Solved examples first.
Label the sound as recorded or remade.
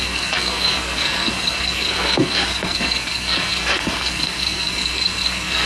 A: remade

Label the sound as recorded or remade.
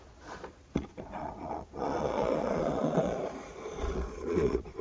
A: remade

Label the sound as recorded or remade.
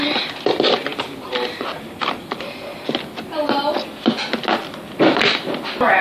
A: recorded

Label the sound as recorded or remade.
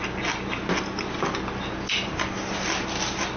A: recorded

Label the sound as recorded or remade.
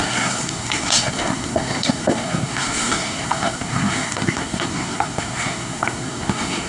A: remade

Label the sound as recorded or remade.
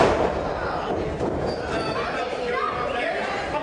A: recorded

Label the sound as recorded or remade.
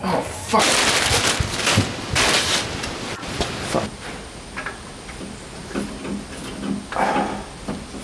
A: recorded